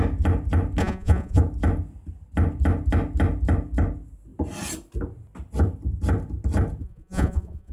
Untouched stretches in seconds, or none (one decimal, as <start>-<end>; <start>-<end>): 0.0-0.8; 1.4-6.8

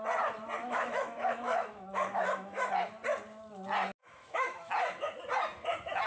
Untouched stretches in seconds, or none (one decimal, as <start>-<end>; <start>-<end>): 0.0-0.6; 2.7-4.0; 4.7-6.1

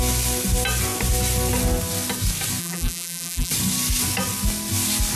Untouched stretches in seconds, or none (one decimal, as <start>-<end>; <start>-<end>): 0.0-2.6; 3.5-5.2

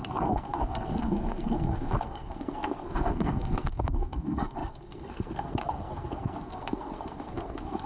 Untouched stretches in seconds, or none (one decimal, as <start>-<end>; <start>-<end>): none

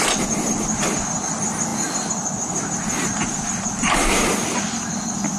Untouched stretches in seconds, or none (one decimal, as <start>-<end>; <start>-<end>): 0.0-5.4

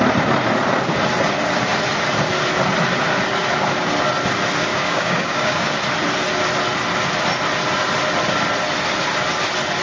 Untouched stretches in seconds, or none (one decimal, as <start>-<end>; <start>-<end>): 0.0-4.7; 5.7-9.8

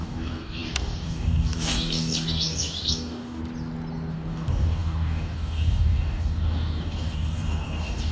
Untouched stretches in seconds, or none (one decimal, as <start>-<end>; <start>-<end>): 3.4-4.1